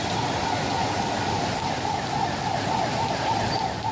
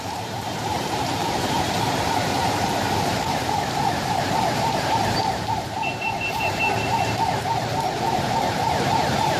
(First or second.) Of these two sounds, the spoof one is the second